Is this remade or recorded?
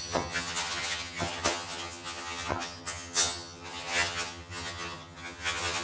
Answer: remade